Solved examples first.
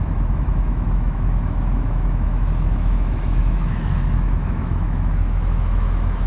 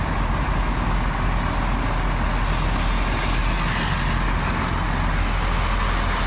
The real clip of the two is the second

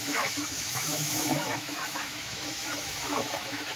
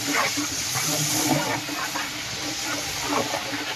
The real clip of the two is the second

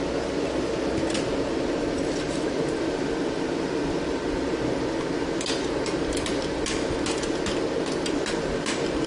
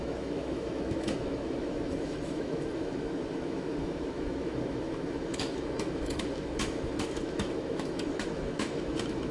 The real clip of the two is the first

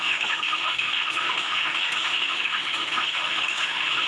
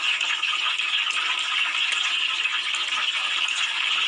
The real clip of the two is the second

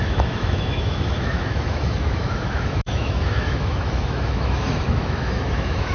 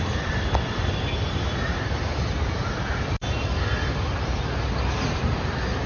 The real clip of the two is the second